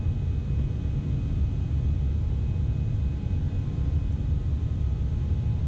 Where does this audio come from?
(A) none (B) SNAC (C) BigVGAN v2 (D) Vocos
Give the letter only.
A